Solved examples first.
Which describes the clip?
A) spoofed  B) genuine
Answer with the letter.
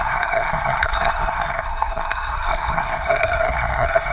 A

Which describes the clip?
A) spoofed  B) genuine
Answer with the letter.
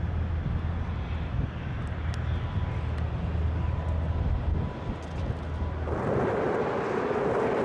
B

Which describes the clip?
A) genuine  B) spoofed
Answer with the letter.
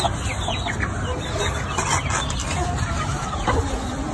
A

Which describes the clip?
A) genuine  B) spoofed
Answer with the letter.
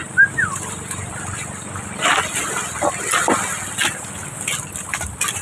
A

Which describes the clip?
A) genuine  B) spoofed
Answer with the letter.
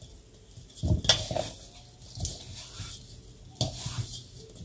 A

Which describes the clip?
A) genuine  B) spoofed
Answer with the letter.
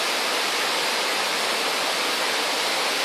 B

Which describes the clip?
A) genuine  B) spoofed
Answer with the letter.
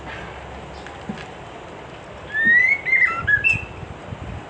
A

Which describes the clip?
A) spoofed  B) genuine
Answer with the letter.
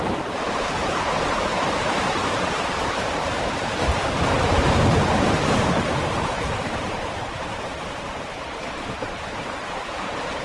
A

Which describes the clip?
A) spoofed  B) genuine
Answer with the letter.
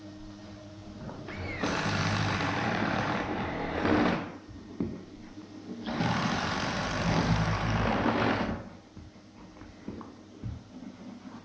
A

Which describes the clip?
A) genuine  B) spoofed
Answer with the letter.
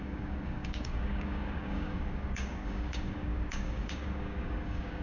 B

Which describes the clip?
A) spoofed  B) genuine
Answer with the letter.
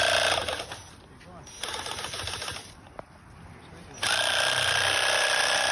B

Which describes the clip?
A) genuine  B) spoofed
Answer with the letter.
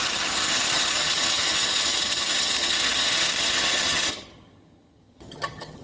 B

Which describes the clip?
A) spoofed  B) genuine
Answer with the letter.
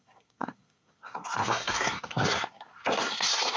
A